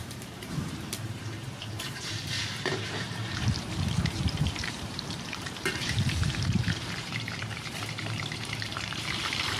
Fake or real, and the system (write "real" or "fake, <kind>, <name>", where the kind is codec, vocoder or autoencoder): fake, vocoder, BigVGAN v2